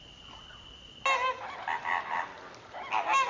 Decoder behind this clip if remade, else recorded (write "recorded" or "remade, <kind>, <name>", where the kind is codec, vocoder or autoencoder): recorded